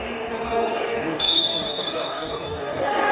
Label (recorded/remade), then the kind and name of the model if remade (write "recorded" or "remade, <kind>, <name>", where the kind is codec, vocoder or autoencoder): remade, codec, DAC